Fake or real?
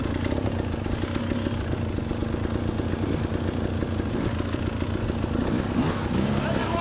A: real